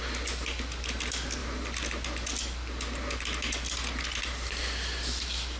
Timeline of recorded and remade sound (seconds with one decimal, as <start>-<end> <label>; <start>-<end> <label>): 0.0-5.6 recorded